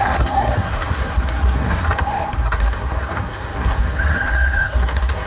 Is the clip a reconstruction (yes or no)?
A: yes